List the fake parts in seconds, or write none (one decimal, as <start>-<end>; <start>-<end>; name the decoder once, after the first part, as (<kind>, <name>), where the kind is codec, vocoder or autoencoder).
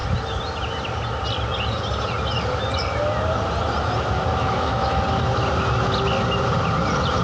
4.4-5.0 (autoencoder, DAC-VAE)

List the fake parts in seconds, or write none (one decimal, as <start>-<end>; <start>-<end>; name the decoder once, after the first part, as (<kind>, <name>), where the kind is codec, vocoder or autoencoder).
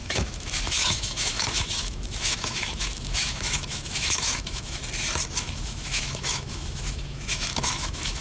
0.0-4.8 (autoencoder, DAC-VAE); 5.4-8.2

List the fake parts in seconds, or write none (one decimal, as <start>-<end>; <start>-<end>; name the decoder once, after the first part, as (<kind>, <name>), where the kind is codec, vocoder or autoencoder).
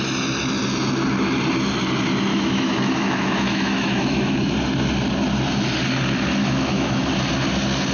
2.3-4.5 (autoencoder, DAC-VAE); 6.4-7.1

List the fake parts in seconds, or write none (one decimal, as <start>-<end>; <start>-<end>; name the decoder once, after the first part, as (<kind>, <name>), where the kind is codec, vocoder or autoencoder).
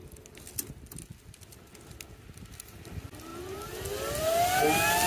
none